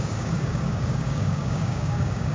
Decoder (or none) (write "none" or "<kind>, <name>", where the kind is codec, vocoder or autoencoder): codec, DAC